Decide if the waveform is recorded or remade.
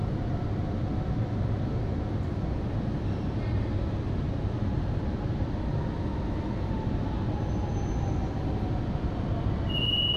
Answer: recorded